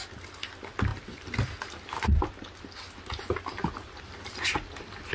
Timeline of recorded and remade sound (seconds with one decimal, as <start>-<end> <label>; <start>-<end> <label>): 0.0-5.1 recorded